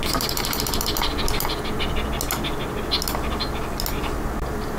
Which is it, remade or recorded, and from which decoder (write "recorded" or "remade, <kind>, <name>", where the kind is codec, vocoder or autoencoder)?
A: recorded